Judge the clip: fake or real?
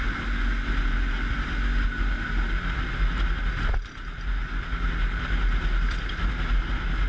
real